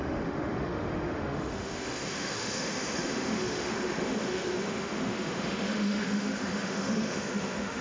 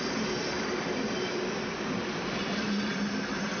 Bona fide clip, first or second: second